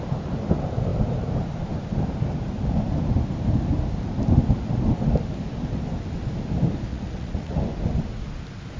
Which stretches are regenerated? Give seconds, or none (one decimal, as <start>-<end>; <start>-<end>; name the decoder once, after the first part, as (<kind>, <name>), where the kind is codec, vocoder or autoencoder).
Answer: 6.9-7.6 (vocoder, Vocos)